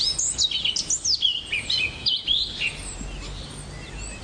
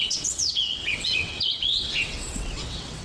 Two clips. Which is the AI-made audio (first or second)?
second